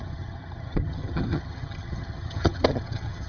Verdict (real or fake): fake